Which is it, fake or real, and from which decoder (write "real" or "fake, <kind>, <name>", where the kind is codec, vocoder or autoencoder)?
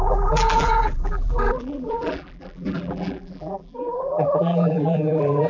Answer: fake, vocoder, BigVGAN v2